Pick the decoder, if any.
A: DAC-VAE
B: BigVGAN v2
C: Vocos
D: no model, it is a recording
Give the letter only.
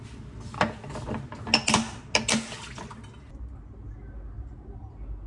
D